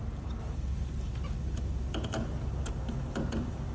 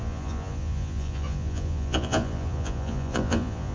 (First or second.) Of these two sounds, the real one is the first